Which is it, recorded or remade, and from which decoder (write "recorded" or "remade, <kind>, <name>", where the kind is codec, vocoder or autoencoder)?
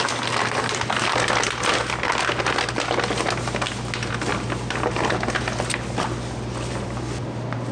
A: recorded